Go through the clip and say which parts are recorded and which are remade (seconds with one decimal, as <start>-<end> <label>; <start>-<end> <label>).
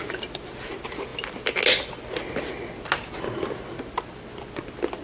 0.0-5.0 recorded